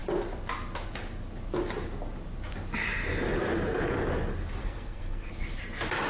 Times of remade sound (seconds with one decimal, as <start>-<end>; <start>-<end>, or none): 4.6-5.3